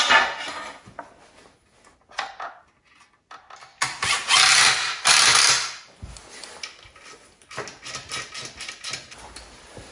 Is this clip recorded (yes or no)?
yes